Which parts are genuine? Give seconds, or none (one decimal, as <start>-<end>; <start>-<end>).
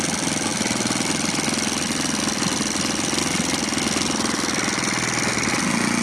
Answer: 0.0-6.0